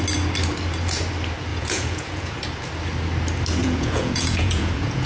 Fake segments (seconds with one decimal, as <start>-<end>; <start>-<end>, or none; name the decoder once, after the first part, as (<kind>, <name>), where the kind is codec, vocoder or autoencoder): 1.5-2.3 (vocoder, Vocos); 3.6-5.1